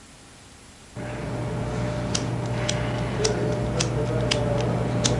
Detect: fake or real real